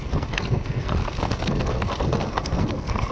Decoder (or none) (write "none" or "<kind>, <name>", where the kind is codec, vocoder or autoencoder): codec, SNAC